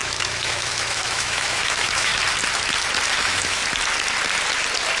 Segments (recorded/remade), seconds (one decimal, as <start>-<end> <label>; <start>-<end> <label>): 0.0-2.1 remade; 2.1-3.2 recorded; 3.2-3.6 remade; 3.6-5.0 recorded